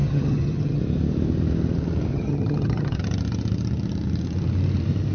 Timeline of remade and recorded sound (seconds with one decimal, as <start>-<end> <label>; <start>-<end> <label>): 0.0-0.8 remade; 0.8-2.1 recorded; 2.1-3.0 remade; 3.0-5.1 recorded